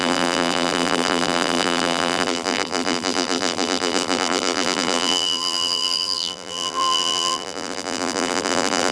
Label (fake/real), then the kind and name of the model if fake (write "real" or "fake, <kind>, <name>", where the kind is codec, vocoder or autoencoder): fake, vocoder, BigVGAN v2